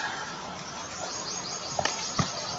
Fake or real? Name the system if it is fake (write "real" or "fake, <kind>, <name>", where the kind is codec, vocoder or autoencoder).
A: fake, vocoder, BigVGAN v2